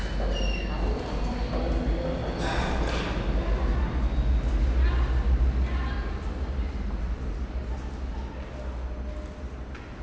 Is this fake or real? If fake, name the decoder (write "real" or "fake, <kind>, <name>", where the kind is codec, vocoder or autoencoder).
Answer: real